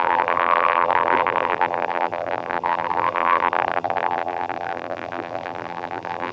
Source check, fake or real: fake